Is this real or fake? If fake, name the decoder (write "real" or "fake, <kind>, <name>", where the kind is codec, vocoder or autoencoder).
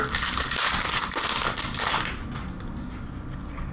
real